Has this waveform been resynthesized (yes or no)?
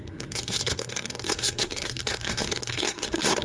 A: yes